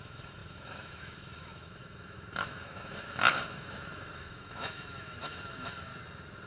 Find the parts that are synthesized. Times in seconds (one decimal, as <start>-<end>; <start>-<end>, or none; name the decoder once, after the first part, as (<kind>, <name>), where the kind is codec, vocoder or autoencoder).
0.0-5.9 (autoencoder, DAC-VAE)